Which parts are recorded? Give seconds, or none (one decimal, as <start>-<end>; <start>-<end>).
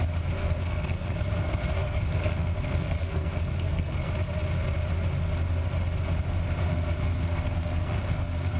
0.0-0.4; 4.1-6.7